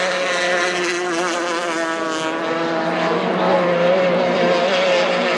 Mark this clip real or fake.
real